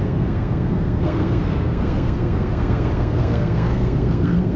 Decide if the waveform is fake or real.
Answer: fake